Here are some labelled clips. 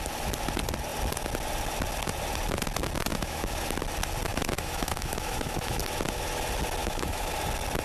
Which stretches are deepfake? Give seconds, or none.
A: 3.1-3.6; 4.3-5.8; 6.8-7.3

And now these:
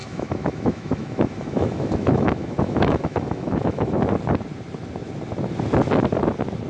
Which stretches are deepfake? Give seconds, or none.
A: 0.0-4.0

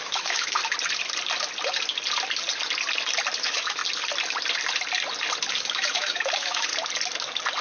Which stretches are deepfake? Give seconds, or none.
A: 0.0-0.6; 3.4-3.8; 5.5-6.7

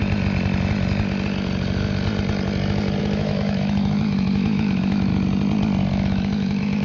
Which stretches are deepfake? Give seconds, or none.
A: 3.0-5.1; 5.9-6.8

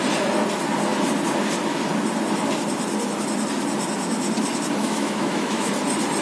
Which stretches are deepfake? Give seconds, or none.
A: 4.8-5.7

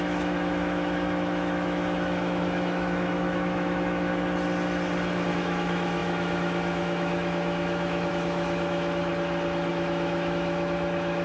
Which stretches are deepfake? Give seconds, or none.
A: 0.0-4.1; 5.3-9.1; 9.7-11.2

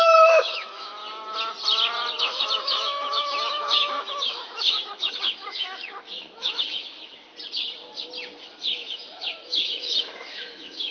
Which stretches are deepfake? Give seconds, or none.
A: 0.0-1.0; 2.2-7.3; 8.4-10.9

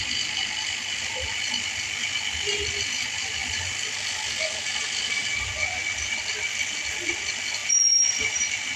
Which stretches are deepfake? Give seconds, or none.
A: none